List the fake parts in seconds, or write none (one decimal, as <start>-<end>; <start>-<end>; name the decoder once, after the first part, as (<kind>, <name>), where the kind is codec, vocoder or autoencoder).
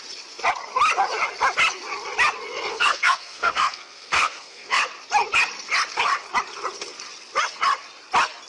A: 2.7-4.8 (codec, SNAC)